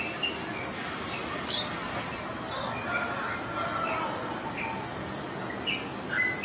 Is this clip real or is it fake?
real